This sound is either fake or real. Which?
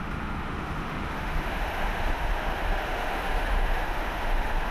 fake